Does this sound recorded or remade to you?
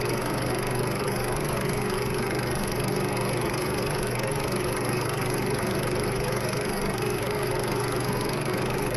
remade